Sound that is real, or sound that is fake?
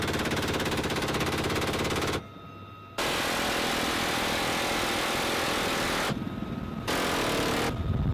real